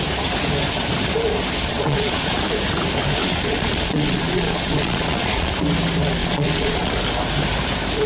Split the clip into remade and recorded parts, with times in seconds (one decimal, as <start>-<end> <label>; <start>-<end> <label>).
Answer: 0.0-1.7 recorded; 1.7-2.4 remade; 2.4-3.2 recorded; 3.2-5.5 remade; 5.5-6.2 recorded; 6.2-6.9 remade; 6.9-8.1 recorded